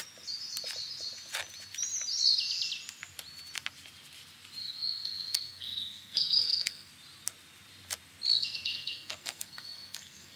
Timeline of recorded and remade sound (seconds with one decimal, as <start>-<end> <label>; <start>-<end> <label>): 0.0-4.6 recorded; 4.6-6.9 remade; 6.9-8.3 recorded; 8.3-10.4 remade